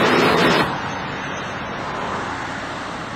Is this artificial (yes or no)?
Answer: no